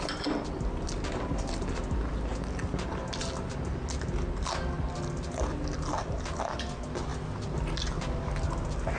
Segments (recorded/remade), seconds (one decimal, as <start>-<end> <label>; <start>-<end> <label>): 0.0-9.0 recorded